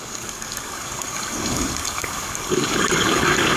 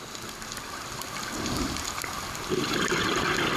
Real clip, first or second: second